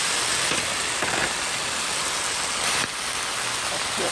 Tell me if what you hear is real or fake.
real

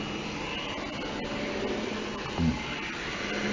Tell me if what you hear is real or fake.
real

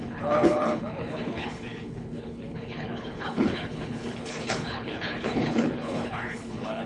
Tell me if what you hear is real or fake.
fake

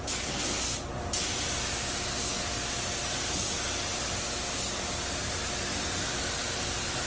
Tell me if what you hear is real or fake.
real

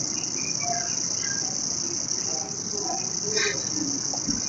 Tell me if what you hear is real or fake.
real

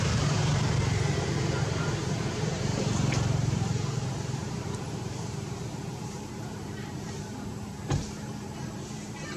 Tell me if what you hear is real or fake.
fake